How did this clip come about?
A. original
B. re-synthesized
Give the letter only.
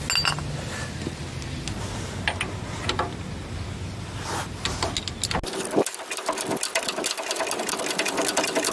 A